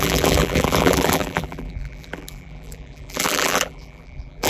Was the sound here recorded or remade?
remade